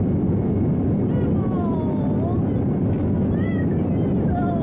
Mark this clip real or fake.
real